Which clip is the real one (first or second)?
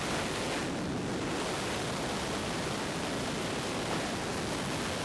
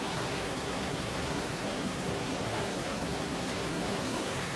first